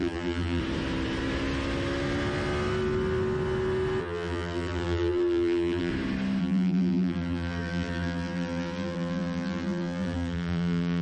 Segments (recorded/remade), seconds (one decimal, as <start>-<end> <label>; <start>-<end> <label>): 0.0-0.6 remade; 0.6-4.0 recorded; 4.0-5.9 remade; 5.9-6.4 recorded; 6.4-11.0 remade